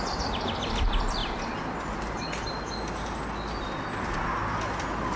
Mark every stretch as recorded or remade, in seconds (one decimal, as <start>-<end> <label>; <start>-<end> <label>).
0.0-5.2 recorded